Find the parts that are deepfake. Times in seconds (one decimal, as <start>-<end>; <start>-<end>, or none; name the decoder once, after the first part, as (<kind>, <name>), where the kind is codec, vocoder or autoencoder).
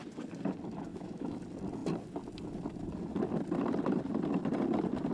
0.9-1.4 (autoencoder, DAC-VAE)